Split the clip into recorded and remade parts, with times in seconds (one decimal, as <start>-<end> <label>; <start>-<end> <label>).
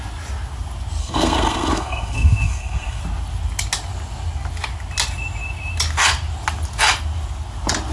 0.0-1.0 recorded; 1.0-3.0 remade; 3.0-7.9 recorded